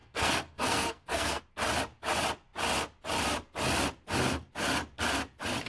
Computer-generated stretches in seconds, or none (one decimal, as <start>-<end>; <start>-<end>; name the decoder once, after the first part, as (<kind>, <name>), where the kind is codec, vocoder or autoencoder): 0.0-1.4 (codec, SNAC)